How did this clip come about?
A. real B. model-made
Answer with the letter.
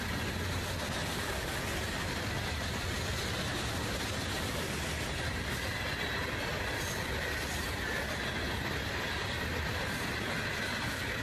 A